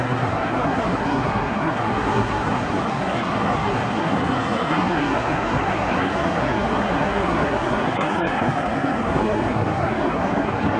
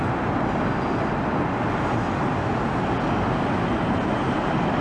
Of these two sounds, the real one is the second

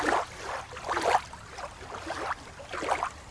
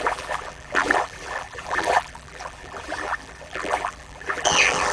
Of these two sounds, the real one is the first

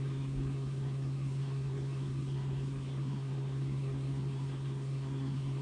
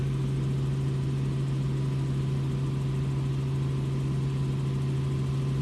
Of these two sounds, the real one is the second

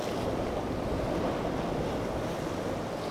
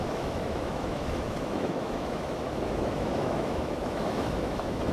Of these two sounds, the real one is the first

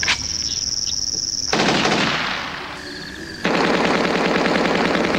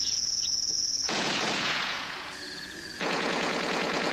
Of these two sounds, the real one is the first